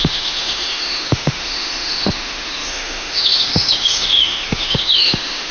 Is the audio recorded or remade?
remade